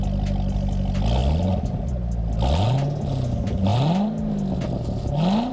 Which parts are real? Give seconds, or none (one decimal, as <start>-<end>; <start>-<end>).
0.0-5.5